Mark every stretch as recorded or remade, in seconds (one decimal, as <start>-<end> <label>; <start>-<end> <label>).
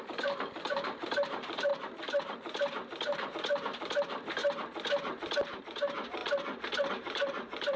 0.0-4.4 remade; 4.4-5.6 recorded; 5.6-6.2 remade; 6.2-6.9 recorded; 6.9-7.8 remade